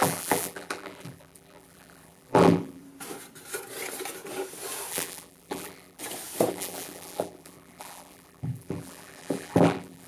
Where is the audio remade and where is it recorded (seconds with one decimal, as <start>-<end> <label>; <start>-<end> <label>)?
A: 0.0-2.8 remade; 2.8-4.9 recorded; 4.9-6.0 remade; 6.0-6.5 recorded; 6.5-10.1 remade